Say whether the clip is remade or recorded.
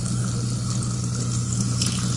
recorded